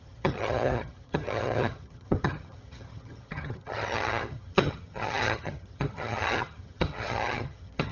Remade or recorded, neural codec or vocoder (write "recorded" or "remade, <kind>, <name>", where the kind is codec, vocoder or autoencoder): remade, vocoder, HiFi-GAN